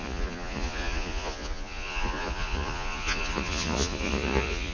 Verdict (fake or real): fake